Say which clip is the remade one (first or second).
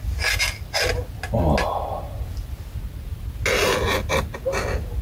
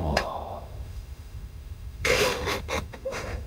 second